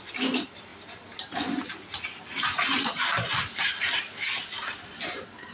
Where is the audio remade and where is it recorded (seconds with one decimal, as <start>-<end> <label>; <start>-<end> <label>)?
0.0-5.5 recorded